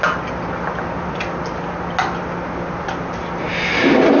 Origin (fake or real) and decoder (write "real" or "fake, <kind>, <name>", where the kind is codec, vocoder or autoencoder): real